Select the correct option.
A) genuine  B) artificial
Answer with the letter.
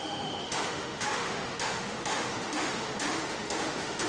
B